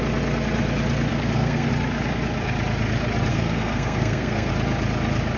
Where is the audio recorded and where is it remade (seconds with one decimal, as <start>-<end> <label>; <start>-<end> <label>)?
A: 0.0-1.1 recorded; 1.1-1.7 remade; 1.7-3.3 recorded; 3.3-4.5 remade; 4.5-5.4 recorded